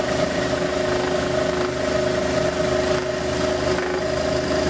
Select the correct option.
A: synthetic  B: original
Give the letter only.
B